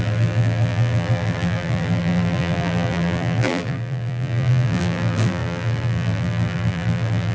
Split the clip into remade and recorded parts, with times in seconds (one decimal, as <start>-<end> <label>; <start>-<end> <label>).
0.0-7.3 remade